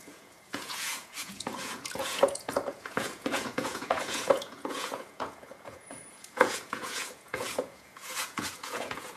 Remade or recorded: remade